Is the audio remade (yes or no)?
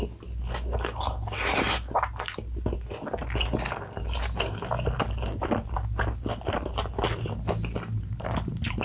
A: no